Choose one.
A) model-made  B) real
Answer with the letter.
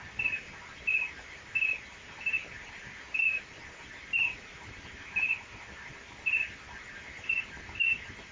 B